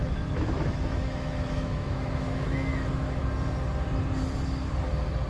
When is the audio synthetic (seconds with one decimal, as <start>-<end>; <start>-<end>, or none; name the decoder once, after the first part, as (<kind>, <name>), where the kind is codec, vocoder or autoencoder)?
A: 0.0-3.2 (autoencoder, DAC-VAE)